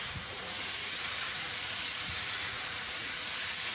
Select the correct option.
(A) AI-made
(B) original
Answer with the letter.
A